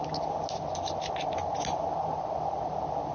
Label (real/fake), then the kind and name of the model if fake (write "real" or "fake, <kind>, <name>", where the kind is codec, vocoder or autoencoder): real